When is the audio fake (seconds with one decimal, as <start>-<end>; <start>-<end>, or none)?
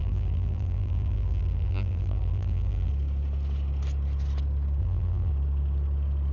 0.0-2.9; 4.8-5.3